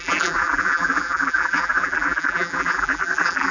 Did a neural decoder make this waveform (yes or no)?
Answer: yes